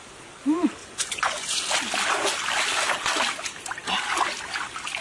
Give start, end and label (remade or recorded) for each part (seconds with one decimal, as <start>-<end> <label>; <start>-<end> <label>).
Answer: 0.0-0.8 recorded; 0.8-1.6 remade; 1.6-5.0 recorded